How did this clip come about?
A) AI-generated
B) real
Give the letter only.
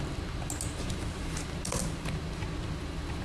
B